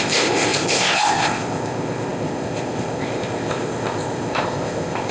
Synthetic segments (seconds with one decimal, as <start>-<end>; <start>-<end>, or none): 0.0-5.1